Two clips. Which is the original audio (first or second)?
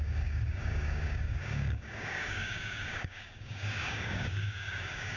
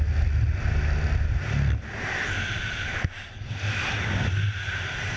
second